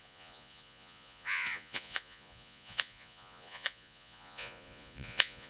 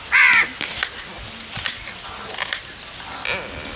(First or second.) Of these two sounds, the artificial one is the first